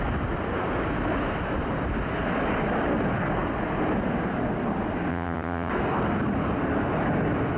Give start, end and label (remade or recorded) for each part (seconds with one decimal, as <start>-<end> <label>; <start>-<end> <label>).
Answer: 0.0-5.1 recorded; 5.1-5.7 remade; 5.7-7.6 recorded